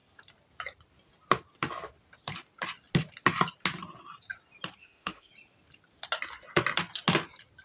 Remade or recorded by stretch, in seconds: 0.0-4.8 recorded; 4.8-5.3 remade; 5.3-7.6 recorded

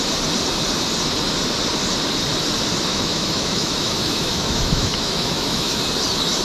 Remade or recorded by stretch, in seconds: 0.0-2.9 recorded; 2.9-5.8 remade; 5.8-6.4 recorded

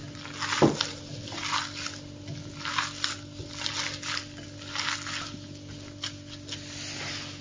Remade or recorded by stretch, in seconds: 0.0-7.4 recorded